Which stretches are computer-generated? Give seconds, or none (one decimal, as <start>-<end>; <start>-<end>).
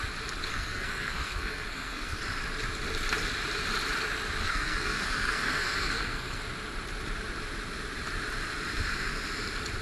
0.5-2.2; 4.4-6.4